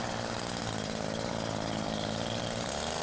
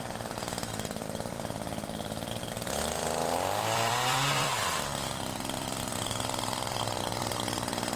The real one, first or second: first